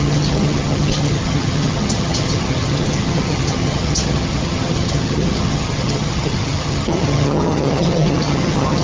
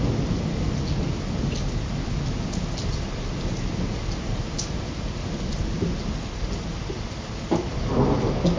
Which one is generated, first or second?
first